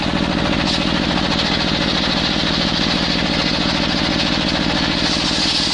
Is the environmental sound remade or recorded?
recorded